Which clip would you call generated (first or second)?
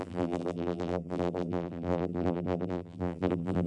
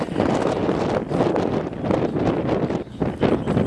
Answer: first